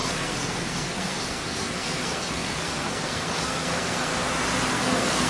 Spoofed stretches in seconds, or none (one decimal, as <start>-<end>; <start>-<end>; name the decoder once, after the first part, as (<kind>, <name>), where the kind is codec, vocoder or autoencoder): 0.0-4.1 (codec, SNAC); 4.7-5.3